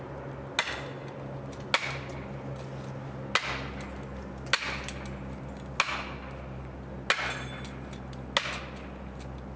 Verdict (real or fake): real